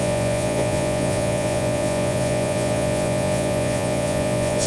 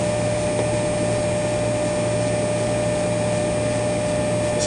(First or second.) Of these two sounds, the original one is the second